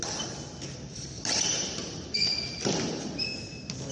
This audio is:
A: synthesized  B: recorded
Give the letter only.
B